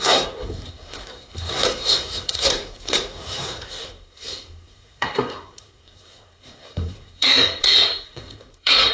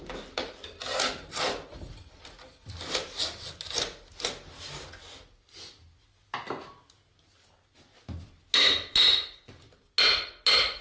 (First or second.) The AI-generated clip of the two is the first